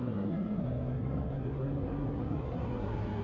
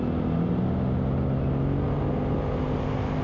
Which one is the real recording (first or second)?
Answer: second